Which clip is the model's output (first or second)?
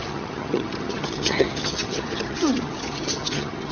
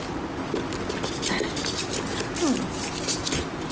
first